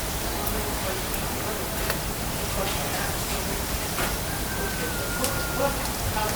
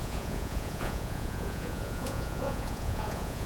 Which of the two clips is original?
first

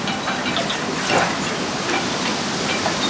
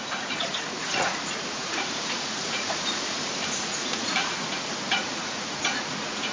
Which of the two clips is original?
first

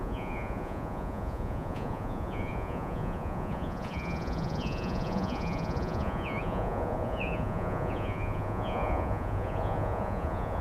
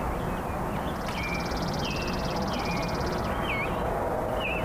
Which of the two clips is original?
second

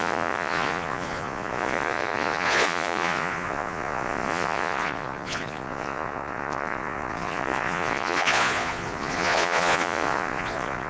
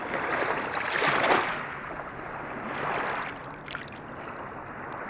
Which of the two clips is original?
second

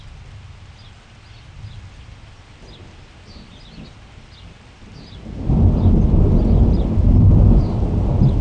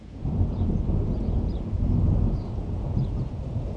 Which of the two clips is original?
first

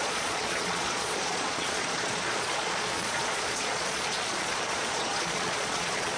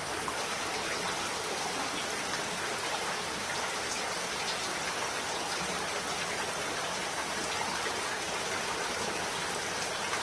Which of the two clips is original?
second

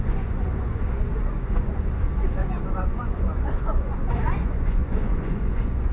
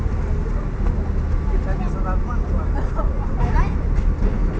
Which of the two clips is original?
second